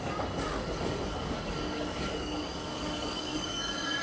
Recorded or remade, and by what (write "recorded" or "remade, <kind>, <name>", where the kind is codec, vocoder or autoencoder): remade, codec, DAC